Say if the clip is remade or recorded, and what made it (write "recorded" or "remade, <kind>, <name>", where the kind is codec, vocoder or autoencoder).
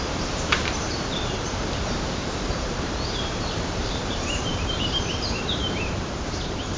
remade, vocoder, BigVGAN v2